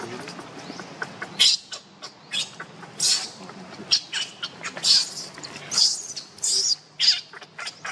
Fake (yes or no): no